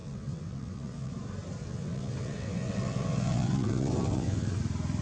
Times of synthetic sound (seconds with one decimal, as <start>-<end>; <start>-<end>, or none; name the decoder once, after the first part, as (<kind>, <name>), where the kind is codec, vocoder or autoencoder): 0.0-1.1 (vocoder, WaveNeXt); 1.6-4.6